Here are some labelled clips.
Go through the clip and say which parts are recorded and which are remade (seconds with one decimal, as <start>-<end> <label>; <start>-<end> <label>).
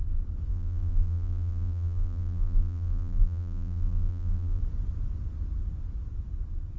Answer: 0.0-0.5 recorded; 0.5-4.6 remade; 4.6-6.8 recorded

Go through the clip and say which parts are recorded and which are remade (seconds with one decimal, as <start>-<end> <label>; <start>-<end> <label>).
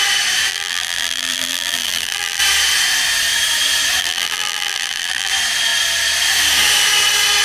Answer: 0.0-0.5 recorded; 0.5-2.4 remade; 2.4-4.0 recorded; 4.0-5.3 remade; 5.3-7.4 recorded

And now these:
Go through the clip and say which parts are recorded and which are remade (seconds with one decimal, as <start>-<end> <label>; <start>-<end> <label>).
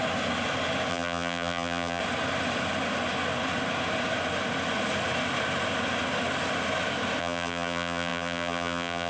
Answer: 0.0-0.9 recorded; 0.9-2.0 remade; 2.0-7.2 recorded; 7.2-9.1 remade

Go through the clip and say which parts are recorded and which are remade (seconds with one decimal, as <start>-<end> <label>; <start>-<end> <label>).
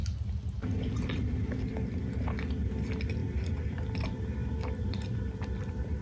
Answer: 0.0-3.2 recorded; 3.2-3.8 remade; 3.8-4.4 recorded; 4.4-5.3 remade; 5.3-6.0 recorded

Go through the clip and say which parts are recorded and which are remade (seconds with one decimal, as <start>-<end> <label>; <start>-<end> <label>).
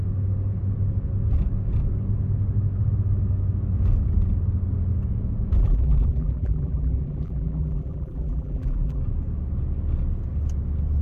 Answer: 0.0-5.6 recorded; 5.6-9.0 remade; 9.0-11.0 recorded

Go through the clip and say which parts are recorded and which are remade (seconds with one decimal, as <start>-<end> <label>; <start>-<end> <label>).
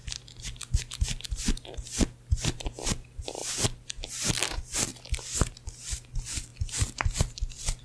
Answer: 0.0-2.9 recorded; 2.9-4.9 remade; 4.9-5.5 recorded; 5.5-7.8 remade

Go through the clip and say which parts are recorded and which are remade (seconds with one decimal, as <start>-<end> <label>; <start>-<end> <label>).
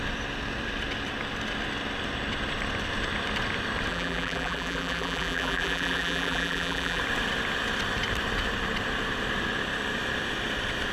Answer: 0.0-3.9 recorded; 3.9-7.0 remade; 7.0-10.9 recorded